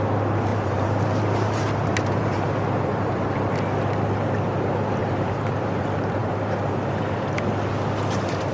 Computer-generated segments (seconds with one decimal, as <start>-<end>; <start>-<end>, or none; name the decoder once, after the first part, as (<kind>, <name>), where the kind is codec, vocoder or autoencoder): 0.5-3.5 (vocoder, BigVGAN v2); 5.0-5.8